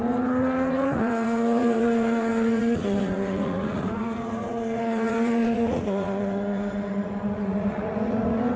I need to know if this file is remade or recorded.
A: remade